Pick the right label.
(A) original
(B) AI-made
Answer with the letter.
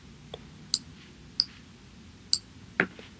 A